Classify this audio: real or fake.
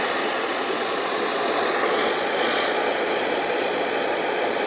fake